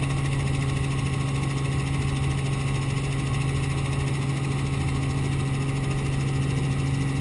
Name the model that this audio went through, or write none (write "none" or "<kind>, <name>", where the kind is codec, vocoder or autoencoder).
none